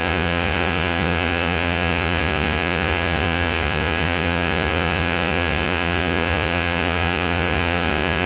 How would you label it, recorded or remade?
remade